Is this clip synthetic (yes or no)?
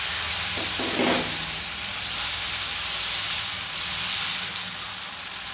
no